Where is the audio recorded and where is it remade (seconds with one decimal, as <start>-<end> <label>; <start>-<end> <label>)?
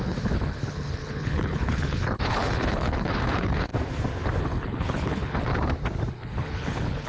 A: 0.0-3.7 remade; 3.7-4.4 recorded; 4.4-5.5 remade; 5.5-6.1 recorded; 6.1-7.1 remade